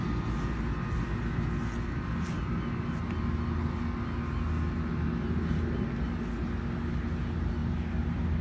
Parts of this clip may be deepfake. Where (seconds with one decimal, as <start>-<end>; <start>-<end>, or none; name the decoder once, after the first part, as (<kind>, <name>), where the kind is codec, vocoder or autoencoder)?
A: none